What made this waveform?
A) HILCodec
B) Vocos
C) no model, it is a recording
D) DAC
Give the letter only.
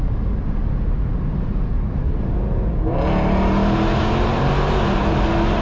C